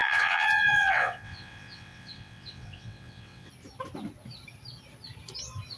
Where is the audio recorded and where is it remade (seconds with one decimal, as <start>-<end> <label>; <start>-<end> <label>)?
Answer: 0.0-3.5 remade; 3.5-5.8 recorded